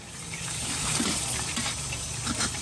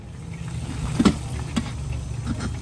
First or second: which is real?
second